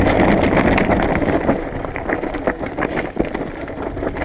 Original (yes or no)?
yes